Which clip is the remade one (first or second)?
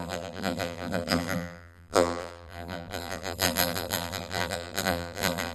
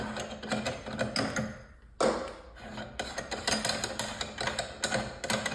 first